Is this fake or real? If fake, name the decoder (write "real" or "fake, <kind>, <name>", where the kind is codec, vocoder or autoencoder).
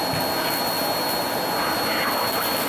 real